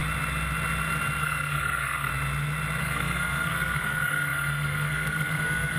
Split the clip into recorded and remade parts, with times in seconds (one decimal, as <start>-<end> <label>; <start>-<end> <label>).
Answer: 0.0-1.2 recorded; 1.2-2.1 remade; 2.1-2.8 recorded; 2.8-5.8 remade